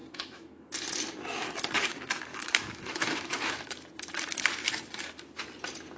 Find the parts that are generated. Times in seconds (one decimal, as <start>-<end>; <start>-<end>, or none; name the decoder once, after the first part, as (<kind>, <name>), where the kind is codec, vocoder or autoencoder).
0.0-0.7 (autoencoder, DAC-VAE); 2.3-3.5

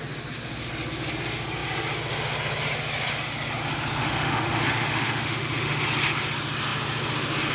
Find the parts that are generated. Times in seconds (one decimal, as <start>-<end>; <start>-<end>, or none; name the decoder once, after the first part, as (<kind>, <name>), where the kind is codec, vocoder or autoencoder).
4.0-5.8 (autoencoder, DAC-VAE)